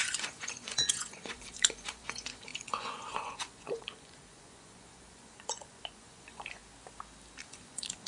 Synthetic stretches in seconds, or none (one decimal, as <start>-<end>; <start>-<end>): 0.0-6.6; 7.4-8.1